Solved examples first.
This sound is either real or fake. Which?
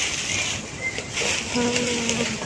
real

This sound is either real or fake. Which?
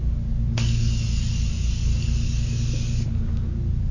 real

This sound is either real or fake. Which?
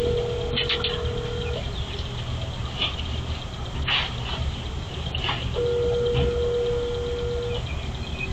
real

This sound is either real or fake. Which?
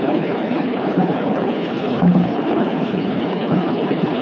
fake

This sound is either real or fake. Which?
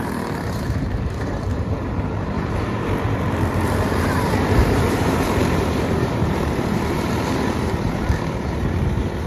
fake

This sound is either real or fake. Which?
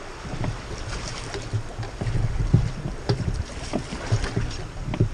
real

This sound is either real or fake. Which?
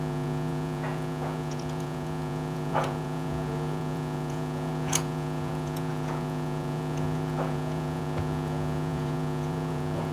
fake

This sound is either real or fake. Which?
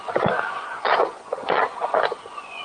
fake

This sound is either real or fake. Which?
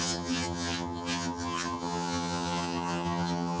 fake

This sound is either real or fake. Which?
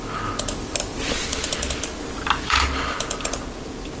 real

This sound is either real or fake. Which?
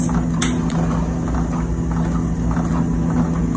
real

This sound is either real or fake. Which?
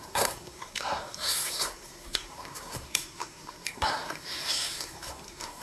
fake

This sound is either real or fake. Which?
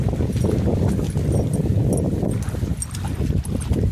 real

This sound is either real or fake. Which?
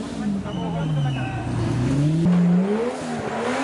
real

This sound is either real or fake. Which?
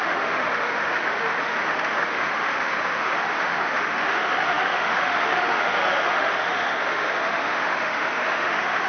fake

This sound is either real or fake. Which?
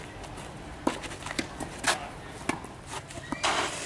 real